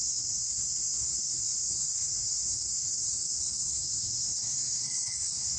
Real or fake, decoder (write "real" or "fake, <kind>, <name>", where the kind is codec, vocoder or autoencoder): fake, codec, SNAC